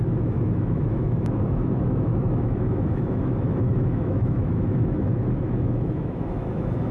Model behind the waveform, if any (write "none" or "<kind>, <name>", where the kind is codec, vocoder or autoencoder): autoencoder, DAC-VAE